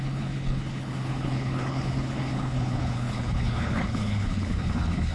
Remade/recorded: remade